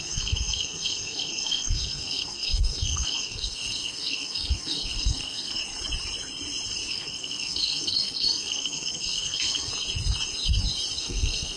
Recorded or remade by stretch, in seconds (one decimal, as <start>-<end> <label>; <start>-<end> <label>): 0.0-5.6 remade; 5.6-6.9 recorded; 6.9-9.7 remade; 9.7-11.0 recorded; 11.0-11.6 remade